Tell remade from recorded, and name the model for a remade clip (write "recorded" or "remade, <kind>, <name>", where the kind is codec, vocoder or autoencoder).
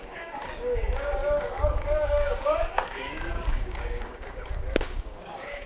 remade, codec, DAC